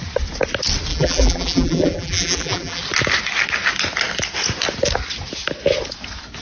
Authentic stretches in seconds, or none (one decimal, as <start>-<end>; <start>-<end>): 0.0-0.9; 2.8-6.4